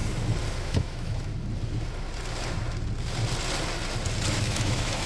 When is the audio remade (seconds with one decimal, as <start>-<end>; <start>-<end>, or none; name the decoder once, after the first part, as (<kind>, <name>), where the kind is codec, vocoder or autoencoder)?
0.6-1.3 (autoencoder, DAC-VAE); 4.4-5.1